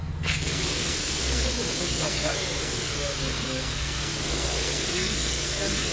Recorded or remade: remade